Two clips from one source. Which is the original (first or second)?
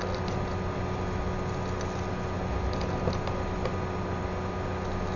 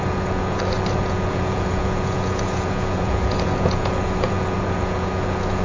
first